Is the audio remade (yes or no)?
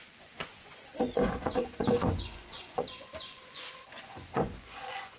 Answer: yes